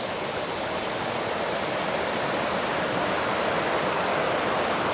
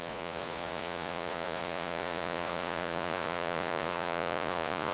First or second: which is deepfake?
second